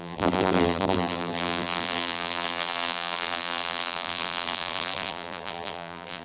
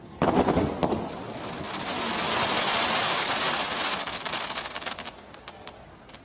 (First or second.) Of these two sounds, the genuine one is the second